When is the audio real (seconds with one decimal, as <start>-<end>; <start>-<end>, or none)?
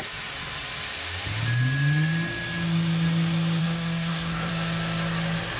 0.0-3.6; 4.5-5.6